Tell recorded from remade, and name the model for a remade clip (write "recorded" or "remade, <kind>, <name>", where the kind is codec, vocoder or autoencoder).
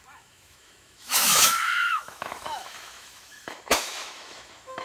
remade, autoencoder, DAC-VAE